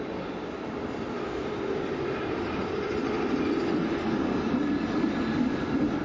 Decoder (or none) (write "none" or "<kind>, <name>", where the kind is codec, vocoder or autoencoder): none